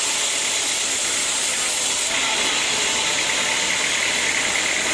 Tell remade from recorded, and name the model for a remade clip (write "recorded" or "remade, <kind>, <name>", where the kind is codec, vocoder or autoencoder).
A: recorded